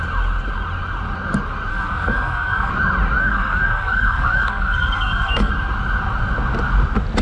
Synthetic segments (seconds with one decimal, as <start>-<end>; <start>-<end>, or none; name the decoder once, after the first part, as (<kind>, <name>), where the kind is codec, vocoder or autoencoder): 1.7-2.7 (codec, SNAC); 3.2-5.5

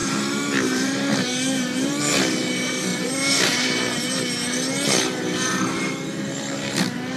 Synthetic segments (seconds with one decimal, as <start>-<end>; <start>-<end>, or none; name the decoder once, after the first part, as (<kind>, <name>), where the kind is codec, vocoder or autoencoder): 0.0-2.0 (vocoder, BigVGAN v2); 2.9-4.1

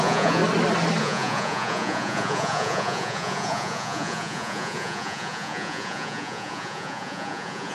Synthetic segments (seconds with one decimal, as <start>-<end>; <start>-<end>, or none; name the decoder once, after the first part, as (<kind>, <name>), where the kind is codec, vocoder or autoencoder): 0.0-0.4 (vocoder, Vocos); 1.0-7.7

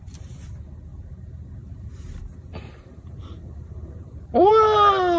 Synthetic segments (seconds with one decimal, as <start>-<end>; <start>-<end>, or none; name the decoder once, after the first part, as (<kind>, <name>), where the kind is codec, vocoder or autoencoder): 1.6-4.5 (vocoder, BigVGAN v2)

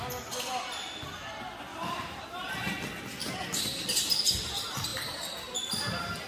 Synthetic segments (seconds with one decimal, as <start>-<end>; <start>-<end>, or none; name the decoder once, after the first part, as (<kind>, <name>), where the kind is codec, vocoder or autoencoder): 1.7-2.7 (vocoder, BigVGAN v2)

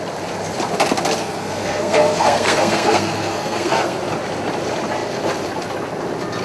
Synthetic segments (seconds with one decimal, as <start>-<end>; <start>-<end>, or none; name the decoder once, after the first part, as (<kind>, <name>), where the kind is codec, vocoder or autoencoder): 1.2-4.0 (codec, SNAC)

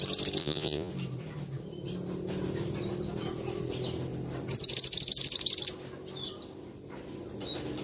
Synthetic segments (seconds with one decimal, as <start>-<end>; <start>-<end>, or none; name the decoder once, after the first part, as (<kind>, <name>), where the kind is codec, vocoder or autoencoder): 0.4-0.9 (vocoder, Vocos)